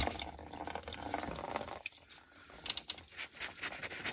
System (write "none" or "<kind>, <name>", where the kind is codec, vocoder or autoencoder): none